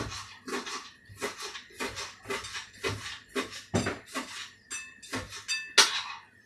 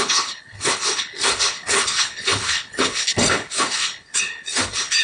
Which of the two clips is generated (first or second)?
second